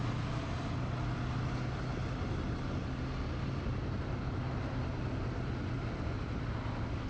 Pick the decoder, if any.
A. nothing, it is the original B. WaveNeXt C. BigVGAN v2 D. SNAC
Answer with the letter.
A